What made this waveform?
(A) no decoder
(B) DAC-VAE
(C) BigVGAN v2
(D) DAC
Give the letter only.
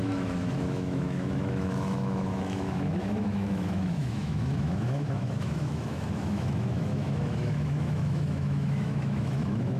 B